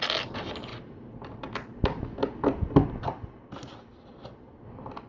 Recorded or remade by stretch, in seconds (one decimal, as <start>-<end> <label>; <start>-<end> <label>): 0.0-5.1 recorded